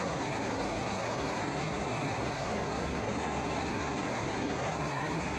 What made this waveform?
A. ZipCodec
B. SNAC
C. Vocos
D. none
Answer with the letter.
B